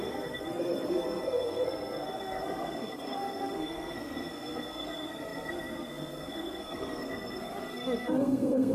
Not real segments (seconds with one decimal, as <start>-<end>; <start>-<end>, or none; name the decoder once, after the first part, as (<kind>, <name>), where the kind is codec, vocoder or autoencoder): 0.0-8.7 (codec, SNAC)

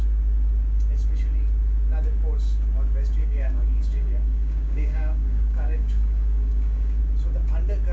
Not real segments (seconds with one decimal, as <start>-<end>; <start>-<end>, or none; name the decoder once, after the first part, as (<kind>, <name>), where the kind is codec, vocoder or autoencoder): 3.2-7.0 (codec, DAC)